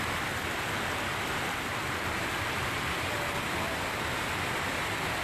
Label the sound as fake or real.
real